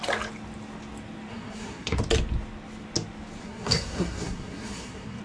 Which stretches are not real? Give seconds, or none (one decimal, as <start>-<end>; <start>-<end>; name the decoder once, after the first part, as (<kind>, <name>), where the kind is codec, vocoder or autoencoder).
1.3-2.0 (codec, SNAC); 3.4-5.2